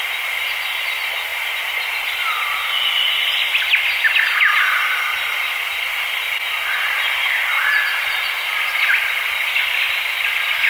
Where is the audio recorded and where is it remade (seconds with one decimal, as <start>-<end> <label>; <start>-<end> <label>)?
0.0-10.7 recorded